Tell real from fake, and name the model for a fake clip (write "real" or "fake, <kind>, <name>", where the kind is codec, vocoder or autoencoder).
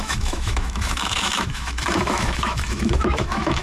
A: fake, autoencoder, DAC-VAE